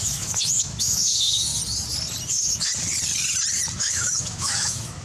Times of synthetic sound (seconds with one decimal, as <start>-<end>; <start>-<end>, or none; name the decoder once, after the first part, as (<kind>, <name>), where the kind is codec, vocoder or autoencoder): 0.0-1.5 (autoencoder, DAC-VAE); 2.3-2.7; 3.8-5.0